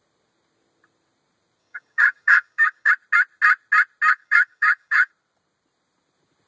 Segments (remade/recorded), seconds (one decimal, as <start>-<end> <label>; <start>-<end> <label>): 0.0-1.6 recorded; 1.6-2.9 remade; 2.9-4.1 recorded; 4.1-5.1 remade; 5.1-6.5 recorded